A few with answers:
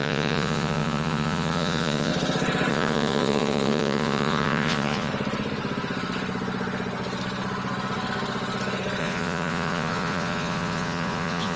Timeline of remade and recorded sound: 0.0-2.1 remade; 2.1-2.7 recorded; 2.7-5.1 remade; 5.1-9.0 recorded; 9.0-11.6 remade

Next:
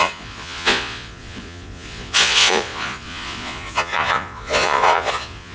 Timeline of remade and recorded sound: 0.0-5.5 remade

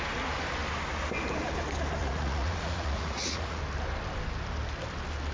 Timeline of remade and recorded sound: 0.0-2.0 recorded; 2.0-3.6 remade; 3.6-5.3 recorded

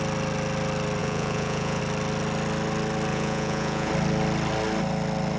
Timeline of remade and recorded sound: 0.0-1.0 recorded; 1.0-1.8 remade; 1.8-3.1 recorded; 3.1-3.9 remade; 3.9-5.4 recorded

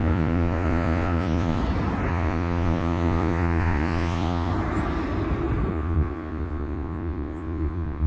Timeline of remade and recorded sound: 0.0-1.6 remade; 1.6-2.1 recorded; 2.1-4.5 remade; 4.5-5.7 recorded; 5.7-8.1 remade